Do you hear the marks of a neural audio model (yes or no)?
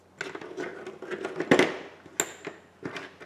no